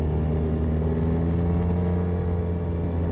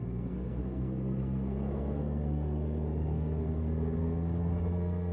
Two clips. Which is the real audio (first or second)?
first